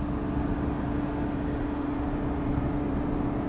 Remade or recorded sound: recorded